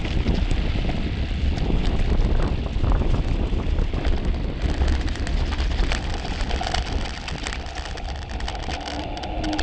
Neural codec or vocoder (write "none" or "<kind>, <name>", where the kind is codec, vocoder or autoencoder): none